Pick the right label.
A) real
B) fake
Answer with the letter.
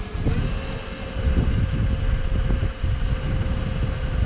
A